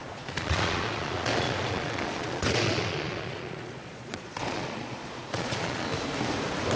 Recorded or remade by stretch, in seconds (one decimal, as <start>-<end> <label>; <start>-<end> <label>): 0.0-5.9 remade; 5.9-6.8 recorded